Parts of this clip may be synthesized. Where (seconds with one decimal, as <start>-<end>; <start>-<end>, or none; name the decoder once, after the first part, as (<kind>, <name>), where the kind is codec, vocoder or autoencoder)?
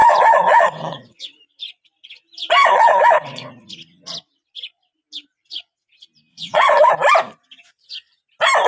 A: 0.0-1.4 (vocoder, WaveNeXt); 2.6-3.5; 6.3-6.9